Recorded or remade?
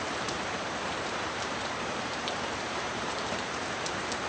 remade